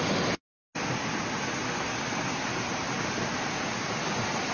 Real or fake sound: real